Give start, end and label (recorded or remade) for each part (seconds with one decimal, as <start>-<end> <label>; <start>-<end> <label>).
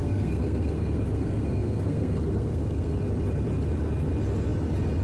0.0-3.0 remade; 3.0-5.0 recorded